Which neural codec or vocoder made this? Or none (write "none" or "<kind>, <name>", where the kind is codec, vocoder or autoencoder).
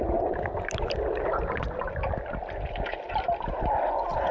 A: none